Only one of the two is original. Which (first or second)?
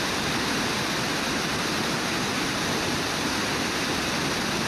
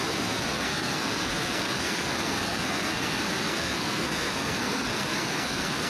first